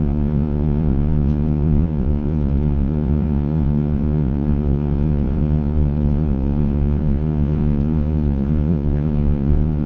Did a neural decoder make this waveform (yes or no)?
yes